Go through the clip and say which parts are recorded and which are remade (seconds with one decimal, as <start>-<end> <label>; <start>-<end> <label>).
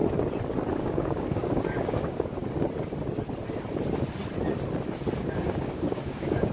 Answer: 0.0-0.7 recorded; 0.7-2.4 remade; 2.4-5.2 recorded; 5.2-6.5 remade